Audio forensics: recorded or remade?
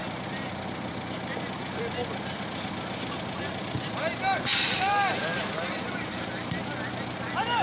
recorded